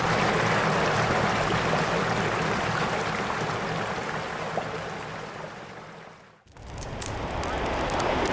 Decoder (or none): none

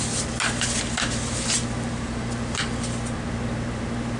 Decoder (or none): none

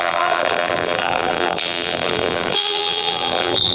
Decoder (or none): vocoder, BigVGAN v2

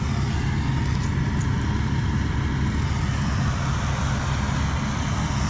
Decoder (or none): none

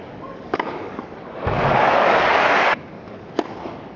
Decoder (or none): codec, DAC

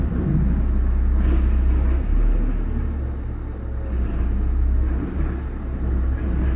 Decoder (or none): none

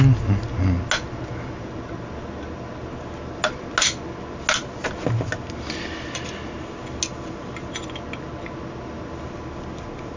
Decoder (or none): none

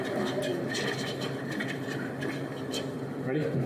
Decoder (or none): none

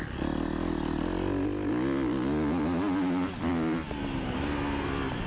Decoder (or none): none